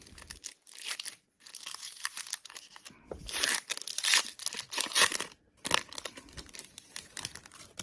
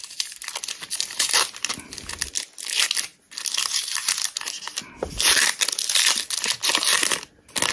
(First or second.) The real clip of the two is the second